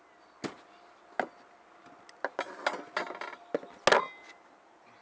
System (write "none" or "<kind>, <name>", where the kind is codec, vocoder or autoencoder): none